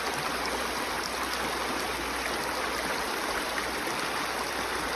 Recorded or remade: recorded